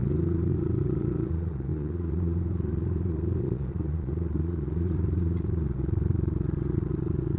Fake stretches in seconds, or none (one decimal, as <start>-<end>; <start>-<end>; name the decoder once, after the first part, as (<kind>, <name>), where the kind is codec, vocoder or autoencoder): 0.0-7.4 (vocoder, Vocos)

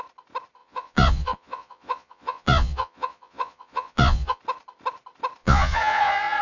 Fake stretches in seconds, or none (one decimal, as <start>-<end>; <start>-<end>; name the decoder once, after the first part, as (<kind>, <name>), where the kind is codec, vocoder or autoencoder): 0.6-4.4 (vocoder, Vocos); 5.4-6.4

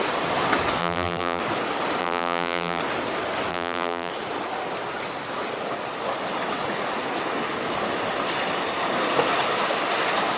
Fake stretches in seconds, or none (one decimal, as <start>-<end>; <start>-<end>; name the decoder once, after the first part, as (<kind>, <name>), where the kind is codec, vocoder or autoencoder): 0.8-1.4 (vocoder, BigVGAN v2); 2.0-2.8; 3.5-4.1

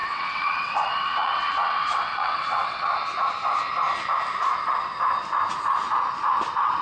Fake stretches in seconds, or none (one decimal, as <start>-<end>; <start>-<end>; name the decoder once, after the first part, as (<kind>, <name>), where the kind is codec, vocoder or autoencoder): 0.0-2.9 (vocoder, WaveNeXt)